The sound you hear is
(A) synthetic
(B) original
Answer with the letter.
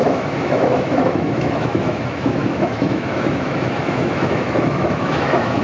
A